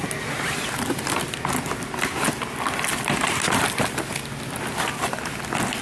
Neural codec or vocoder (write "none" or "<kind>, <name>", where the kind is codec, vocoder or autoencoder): none